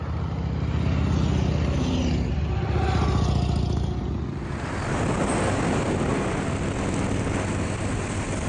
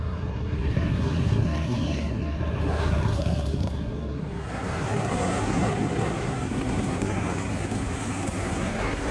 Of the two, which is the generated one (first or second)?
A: second